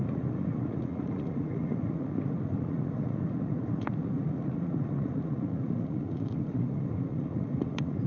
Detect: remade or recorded remade